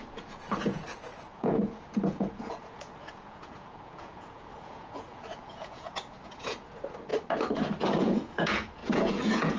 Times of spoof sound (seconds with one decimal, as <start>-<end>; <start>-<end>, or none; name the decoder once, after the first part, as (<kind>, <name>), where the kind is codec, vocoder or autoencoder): 0.0-7.1 (vocoder, Vocos); 8.0-9.6